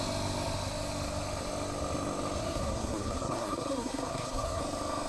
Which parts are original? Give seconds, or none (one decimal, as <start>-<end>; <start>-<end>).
0.0-2.4; 4.6-5.1